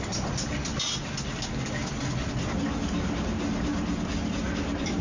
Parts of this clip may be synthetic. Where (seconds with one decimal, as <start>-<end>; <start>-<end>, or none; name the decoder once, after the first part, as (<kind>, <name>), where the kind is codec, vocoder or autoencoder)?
none